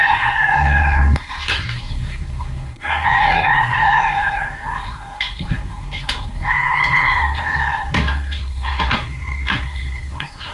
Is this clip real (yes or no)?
no